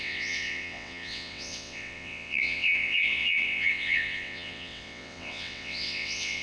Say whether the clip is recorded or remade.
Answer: remade